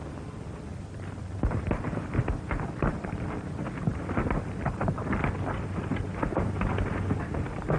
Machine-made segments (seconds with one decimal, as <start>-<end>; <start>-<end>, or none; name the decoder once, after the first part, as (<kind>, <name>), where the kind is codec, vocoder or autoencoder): 0.7-4.6 (vocoder, BigVGAN v2)